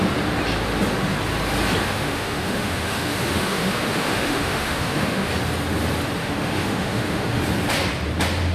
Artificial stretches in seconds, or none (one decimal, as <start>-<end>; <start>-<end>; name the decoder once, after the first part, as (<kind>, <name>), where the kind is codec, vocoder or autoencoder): 1.8-5.3 (autoencoder, DAC-VAE); 6.2-7.4